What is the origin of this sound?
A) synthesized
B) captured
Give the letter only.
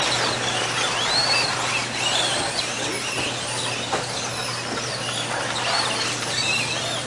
B